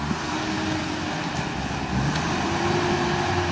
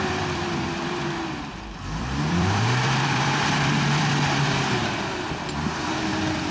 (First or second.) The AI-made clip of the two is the second